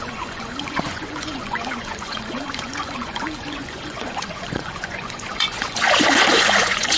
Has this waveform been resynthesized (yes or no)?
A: yes